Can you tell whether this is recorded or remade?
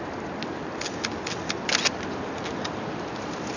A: recorded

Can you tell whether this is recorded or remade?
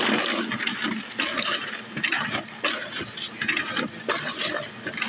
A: recorded